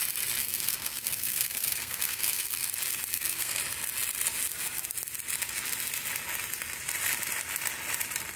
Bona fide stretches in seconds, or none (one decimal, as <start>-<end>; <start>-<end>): 0.0-0.4; 2.7-3.1; 3.6-8.4